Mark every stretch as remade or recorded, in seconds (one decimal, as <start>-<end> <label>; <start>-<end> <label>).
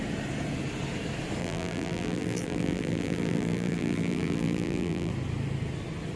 0.0-1.4 recorded; 1.4-5.1 remade; 5.1-6.2 recorded